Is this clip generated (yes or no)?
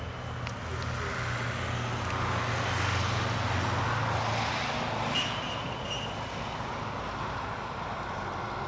no